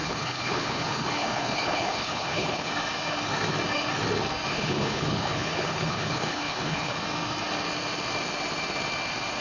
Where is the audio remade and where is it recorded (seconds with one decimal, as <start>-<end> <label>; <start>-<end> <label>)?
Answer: 0.0-2.7 remade; 2.7-4.5 recorded; 4.5-7.0 remade; 7.0-9.4 recorded